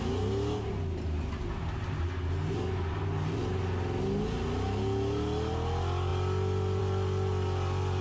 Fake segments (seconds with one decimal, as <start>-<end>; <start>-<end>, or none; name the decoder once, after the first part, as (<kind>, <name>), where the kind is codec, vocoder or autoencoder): none